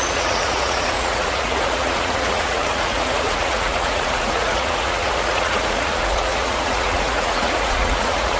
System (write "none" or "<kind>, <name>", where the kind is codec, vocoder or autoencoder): vocoder, Vocos